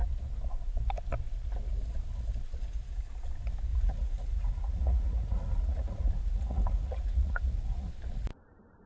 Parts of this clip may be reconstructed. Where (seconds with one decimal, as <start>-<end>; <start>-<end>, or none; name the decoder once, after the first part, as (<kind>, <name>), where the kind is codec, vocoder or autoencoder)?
3.7-7.9 (vocoder, Vocos)